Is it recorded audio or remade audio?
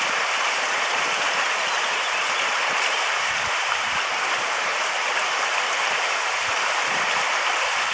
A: remade